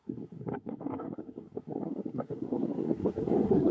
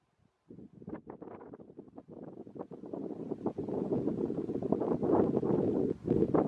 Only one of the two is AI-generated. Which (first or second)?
first